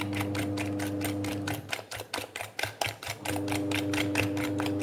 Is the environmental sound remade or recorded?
recorded